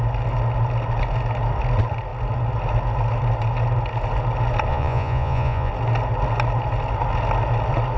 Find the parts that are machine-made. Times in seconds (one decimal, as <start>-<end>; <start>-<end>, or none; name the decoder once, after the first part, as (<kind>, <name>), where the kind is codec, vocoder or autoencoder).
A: 4.7-5.7 (vocoder, Vocos)